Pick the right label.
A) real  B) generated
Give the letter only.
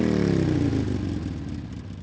A